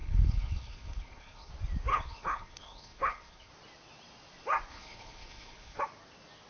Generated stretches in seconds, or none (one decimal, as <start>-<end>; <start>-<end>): 0.0-1.5; 1.9-3.5; 4.7-5.8